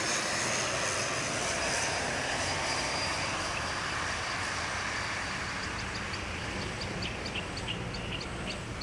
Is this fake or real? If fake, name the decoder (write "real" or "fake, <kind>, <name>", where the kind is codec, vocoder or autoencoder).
real